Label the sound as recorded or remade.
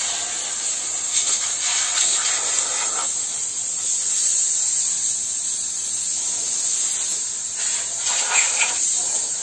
recorded